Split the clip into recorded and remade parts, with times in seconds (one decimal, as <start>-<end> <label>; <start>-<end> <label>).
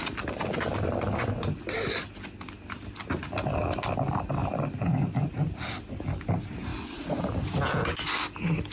0.0-6.7 recorded; 6.7-7.2 remade; 7.2-8.7 recorded